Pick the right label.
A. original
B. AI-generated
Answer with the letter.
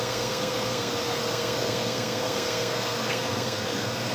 B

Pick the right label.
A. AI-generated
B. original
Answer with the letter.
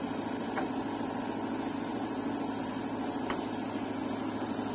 B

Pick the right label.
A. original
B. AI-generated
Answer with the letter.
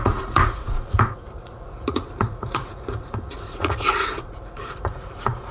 B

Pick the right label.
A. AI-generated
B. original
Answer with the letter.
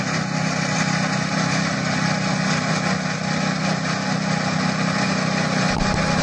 B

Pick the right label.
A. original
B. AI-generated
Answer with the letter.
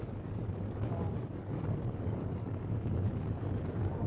B